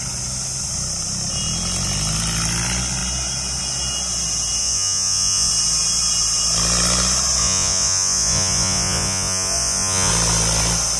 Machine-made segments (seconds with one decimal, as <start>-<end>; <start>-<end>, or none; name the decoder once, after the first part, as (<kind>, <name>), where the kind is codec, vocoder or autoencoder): 4.6-5.5 (vocoder, Vocos); 7.4-10.1